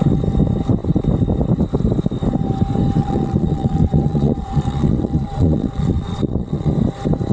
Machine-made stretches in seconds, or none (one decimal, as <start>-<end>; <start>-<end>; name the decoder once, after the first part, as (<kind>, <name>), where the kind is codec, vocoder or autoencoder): 3.0-6.7 (vocoder, Vocos)